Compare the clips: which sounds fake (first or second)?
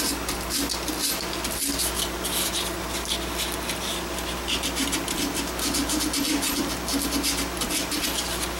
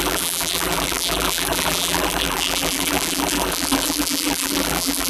second